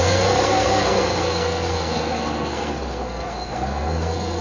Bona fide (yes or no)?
no